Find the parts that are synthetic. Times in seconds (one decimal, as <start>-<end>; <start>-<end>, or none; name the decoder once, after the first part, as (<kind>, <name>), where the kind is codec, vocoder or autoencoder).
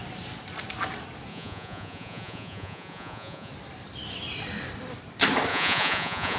1.3-3.5 (vocoder, Vocos); 5.5-6.4